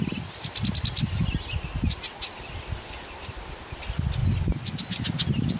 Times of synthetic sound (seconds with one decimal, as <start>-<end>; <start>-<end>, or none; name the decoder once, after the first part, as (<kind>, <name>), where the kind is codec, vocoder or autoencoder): none